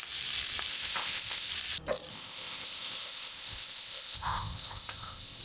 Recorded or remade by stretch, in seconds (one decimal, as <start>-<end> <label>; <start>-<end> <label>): 0.0-0.7 recorded; 0.7-1.5 remade; 1.5-2.1 recorded; 2.1-5.4 remade